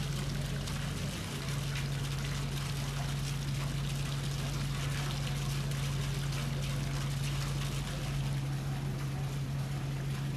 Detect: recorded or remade recorded